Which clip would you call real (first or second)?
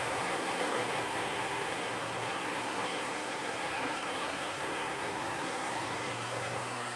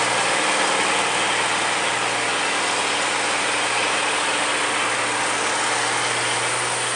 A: second